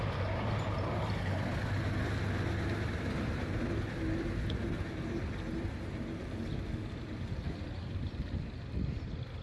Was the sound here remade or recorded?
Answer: recorded